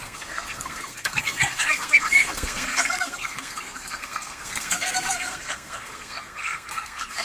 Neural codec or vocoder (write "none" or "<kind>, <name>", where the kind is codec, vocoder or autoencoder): codec, SNAC